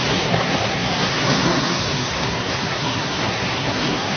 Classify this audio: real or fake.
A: fake